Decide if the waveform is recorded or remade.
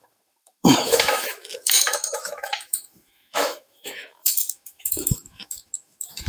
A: remade